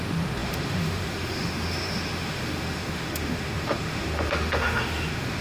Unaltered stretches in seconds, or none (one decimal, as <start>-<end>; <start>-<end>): none